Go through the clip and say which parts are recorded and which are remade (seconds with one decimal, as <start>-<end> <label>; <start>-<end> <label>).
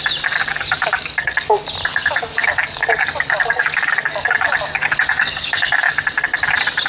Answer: 0.0-0.5 recorded; 0.5-1.5 remade; 1.5-1.9 recorded; 1.9-6.0 remade; 6.0-6.9 recorded